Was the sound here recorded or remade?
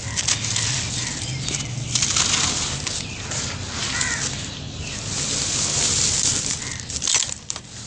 recorded